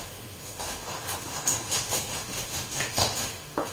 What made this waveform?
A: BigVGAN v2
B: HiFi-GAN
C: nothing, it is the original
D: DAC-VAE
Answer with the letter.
D